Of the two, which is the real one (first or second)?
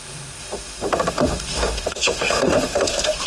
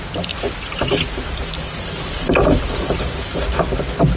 second